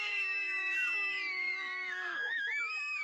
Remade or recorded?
remade